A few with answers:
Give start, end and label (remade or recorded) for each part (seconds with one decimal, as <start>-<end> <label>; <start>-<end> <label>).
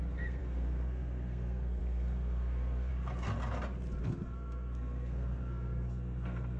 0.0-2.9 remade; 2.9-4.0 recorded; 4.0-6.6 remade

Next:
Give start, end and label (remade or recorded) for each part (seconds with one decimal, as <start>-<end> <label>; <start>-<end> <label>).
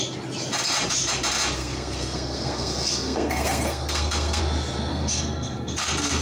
0.0-1.6 recorded; 1.6-4.4 remade; 4.4-4.9 recorded; 4.9-6.2 remade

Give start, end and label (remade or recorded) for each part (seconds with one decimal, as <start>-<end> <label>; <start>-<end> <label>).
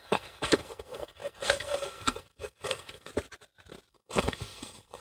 0.0-3.1 remade; 3.1-3.9 recorded; 3.9-5.0 remade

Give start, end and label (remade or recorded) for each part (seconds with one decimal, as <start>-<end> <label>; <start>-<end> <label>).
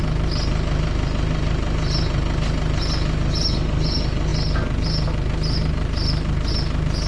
0.0-7.1 recorded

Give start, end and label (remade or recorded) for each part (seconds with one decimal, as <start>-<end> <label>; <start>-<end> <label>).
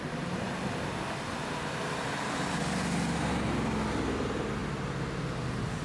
0.0-5.8 recorded